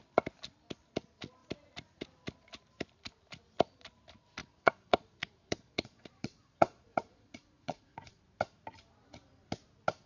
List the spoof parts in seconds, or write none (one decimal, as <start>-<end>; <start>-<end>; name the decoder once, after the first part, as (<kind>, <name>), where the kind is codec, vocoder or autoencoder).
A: 4.4-8.2 (vocoder, Vocos)